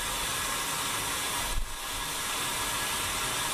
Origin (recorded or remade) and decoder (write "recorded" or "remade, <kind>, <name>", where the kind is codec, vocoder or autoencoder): recorded